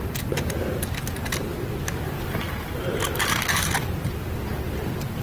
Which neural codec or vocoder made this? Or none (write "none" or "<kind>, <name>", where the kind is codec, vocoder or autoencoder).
none